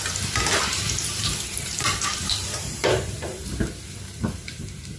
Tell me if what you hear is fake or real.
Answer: fake